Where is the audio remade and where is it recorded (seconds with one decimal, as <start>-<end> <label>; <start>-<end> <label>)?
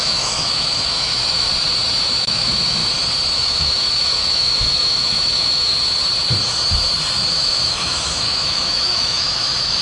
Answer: 0.0-1.5 remade; 1.5-2.2 recorded; 2.2-2.8 remade; 2.8-3.4 recorded; 3.4-5.7 remade; 5.7-7.3 recorded; 7.3-9.8 remade